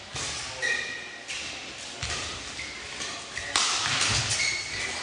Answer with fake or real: real